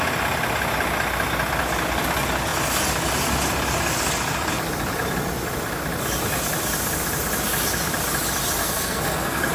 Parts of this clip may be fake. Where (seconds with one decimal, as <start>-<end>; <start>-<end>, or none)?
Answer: 8.6-9.5